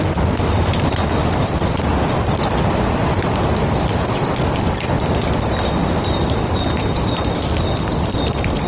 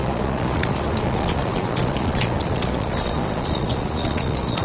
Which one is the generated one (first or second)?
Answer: second